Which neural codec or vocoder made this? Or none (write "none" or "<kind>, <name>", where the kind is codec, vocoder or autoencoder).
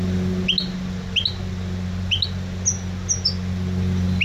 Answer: none